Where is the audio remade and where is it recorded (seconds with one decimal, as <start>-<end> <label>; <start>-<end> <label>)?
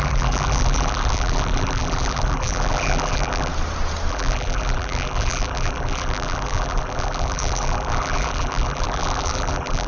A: 0.0-3.5 remade; 3.5-4.1 recorded; 4.1-9.9 remade